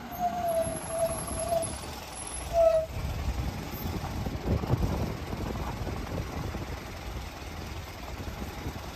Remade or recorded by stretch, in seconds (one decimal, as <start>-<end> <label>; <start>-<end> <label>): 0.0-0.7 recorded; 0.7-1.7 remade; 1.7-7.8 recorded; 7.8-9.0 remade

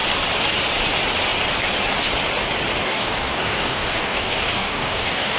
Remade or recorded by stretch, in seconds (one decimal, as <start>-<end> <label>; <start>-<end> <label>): 0.0-2.8 recorded; 2.8-5.4 remade

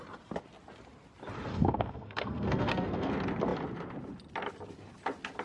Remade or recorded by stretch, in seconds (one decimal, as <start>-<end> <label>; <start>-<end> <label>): 0.0-1.5 recorded; 1.5-3.1 remade; 3.1-5.4 recorded

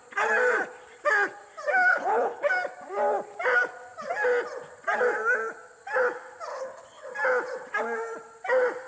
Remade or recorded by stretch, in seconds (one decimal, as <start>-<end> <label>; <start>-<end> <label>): 0.0-1.9 recorded; 1.9-2.5 remade; 2.5-6.5 recorded; 6.5-7.1 remade; 7.1-8.9 recorded

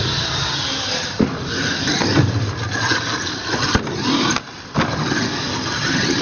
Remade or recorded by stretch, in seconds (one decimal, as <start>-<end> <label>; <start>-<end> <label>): 0.0-6.2 recorded